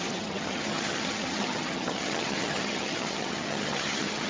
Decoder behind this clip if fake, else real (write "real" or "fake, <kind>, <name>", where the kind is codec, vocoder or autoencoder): fake, vocoder, HiFi-GAN